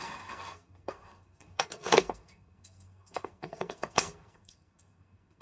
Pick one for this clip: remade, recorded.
remade